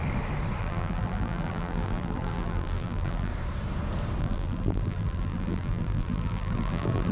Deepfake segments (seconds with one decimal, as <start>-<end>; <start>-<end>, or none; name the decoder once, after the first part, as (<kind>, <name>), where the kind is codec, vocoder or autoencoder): 0.6-3.3 (vocoder, BigVGAN v2); 4.2-7.1